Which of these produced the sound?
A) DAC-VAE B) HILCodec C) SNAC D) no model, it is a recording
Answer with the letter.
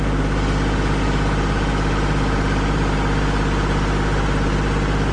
D